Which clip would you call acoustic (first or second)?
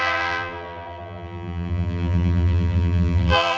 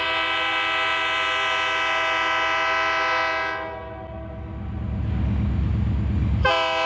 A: second